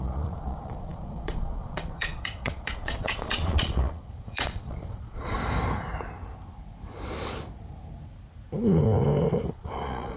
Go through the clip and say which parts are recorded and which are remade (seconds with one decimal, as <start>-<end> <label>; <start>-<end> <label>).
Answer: 0.0-5.4 remade; 5.4-9.5 recorded; 9.5-10.2 remade